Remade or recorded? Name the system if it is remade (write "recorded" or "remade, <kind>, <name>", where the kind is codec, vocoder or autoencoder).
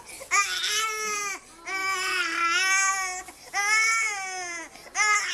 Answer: recorded